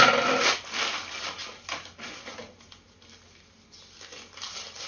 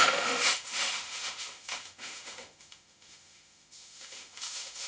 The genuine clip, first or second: first